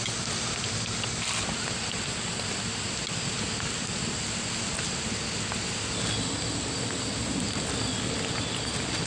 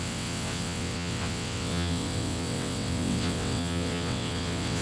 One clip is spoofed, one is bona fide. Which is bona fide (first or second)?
first